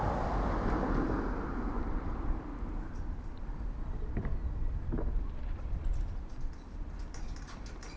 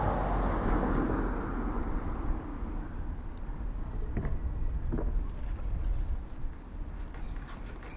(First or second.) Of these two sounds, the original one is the second